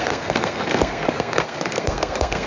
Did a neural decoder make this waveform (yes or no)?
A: yes